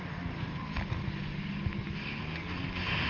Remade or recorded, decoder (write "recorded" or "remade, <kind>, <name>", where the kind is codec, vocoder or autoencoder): recorded